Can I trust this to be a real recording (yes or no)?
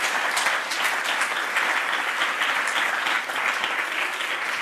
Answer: yes